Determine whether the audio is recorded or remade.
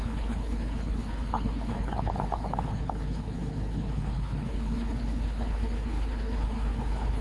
remade